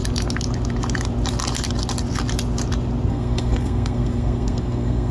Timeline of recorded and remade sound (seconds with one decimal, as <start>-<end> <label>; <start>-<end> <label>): 0.0-3.1 recorded; 3.1-5.1 remade